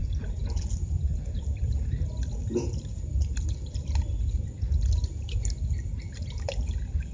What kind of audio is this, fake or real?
real